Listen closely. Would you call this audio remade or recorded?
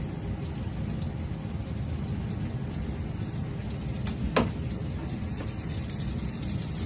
recorded